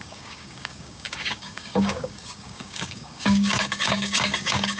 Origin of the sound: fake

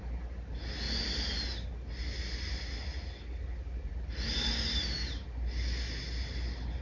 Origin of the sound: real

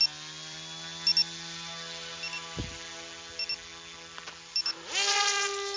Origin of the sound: real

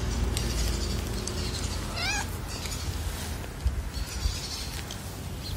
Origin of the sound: real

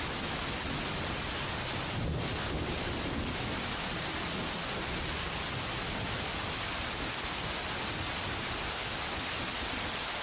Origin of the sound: real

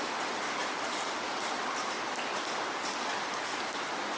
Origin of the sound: real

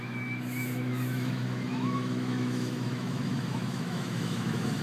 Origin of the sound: fake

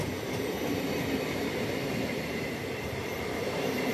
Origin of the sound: fake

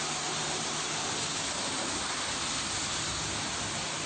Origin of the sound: real